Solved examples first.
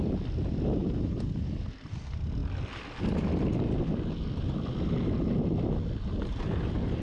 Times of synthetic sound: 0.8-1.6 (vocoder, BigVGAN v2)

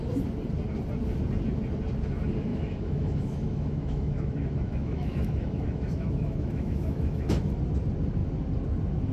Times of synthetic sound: 2.5-7.6 (autoencoder, DAC-VAE)

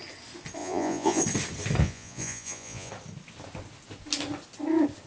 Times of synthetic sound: 0.6-1.2 (vocoder, Vocos); 1.8-2.9

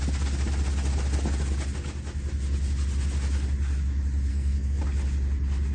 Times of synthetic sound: 4.3-4.8 (codec, SNAC)

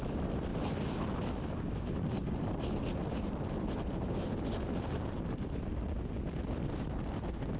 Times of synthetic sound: 0.5-1.2 (vocoder, BigVGAN v2); 3.0-7.6

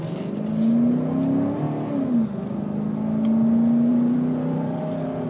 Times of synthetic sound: 3.9-5.3 (vocoder, BigVGAN v2)

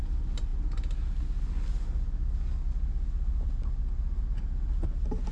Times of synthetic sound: none